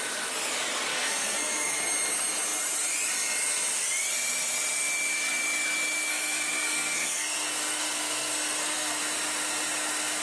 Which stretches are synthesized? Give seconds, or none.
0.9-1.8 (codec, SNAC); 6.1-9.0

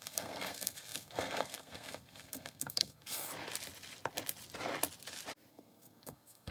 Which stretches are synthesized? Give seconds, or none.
0.0-3.3 (codec, SNAC); 5.5-6.5

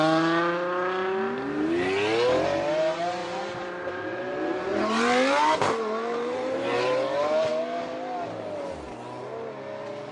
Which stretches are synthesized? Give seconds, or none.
3.2-4.2 (vocoder, BigVGAN v2); 4.7-7.5

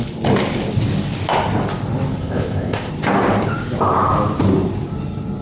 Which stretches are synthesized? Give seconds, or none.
2.2-2.9 (codec, ZipCodec)